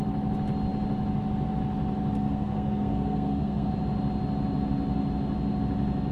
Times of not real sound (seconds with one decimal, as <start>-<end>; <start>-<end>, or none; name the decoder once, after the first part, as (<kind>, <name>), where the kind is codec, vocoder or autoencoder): 2.2-3.7 (codec, SNAC)